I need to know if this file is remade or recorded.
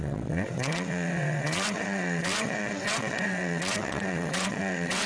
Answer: remade